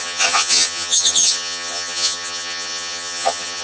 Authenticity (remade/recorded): remade